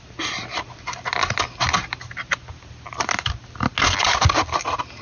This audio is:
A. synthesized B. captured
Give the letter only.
B